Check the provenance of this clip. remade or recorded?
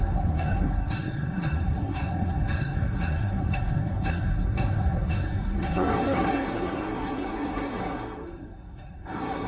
remade